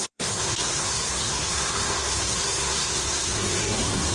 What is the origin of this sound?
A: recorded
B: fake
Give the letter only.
B